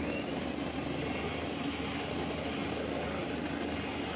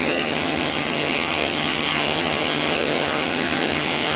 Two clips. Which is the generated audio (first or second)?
second